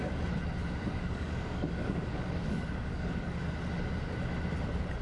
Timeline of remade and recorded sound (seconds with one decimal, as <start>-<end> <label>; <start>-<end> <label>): 0.0-0.6 recorded; 0.6-3.6 remade; 3.6-5.0 recorded